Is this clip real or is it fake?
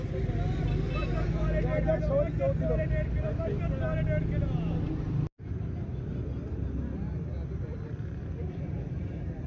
real